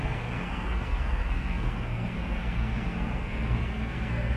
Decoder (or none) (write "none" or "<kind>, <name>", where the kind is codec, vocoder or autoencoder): codec, SNAC